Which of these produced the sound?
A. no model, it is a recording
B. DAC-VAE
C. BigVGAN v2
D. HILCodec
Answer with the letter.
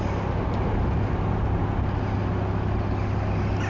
A